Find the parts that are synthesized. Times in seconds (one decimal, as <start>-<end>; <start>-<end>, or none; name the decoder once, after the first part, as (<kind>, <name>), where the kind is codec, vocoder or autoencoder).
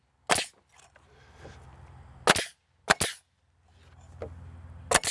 none